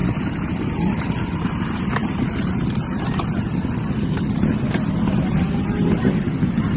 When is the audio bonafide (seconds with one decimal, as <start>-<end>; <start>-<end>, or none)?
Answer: 0.0-6.8